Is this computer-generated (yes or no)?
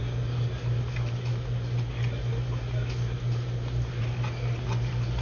no